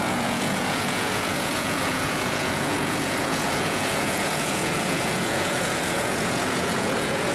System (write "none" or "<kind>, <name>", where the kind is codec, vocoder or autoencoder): vocoder, Vocos